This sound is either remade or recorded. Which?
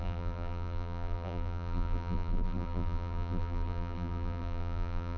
remade